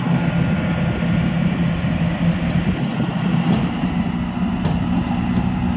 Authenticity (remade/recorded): recorded